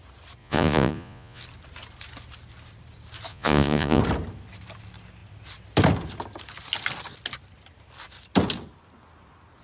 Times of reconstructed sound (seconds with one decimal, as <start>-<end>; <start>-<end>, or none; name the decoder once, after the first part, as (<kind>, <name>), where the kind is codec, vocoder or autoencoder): 0.4-1.4 (vocoder, Vocos); 3.3-4.0